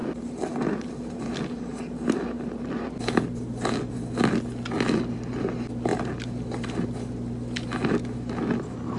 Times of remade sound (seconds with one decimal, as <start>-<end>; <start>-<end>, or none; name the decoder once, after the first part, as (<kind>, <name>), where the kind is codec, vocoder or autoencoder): none

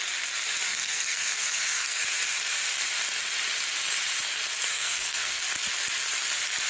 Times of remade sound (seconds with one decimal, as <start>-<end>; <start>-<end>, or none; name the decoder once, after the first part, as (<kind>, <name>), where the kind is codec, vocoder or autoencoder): 0.7-2.0 (codec, SNAC); 4.7-5.4

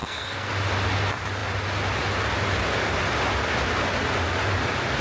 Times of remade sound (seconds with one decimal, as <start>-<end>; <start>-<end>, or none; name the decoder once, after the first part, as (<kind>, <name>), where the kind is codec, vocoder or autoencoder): 0.0-0.5 (codec, SNAC)

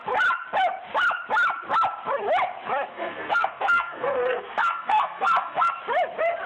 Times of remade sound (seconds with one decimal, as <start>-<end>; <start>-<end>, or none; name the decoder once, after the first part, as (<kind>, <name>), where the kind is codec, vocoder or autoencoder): 2.9-5.7 (codec, SNAC)

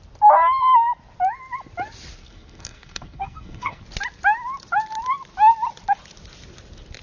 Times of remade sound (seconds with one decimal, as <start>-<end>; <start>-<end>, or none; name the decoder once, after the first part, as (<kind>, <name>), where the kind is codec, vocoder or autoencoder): 2.2-3.8 (codec, SNAC)

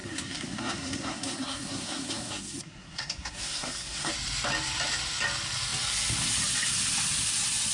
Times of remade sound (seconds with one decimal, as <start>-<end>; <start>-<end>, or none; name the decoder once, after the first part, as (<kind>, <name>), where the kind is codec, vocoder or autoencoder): 0.0-4.1 (codec, SNAC)

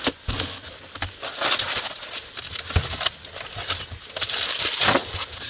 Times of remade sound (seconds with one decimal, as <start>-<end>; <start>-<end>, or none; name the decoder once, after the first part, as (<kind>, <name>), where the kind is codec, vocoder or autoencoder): none